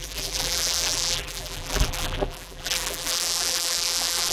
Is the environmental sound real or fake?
fake